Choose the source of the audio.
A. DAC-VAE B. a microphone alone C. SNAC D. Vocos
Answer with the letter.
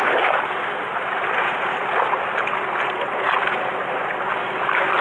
B